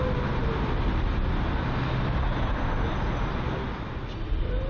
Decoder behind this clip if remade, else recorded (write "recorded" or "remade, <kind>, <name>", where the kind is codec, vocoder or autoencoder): recorded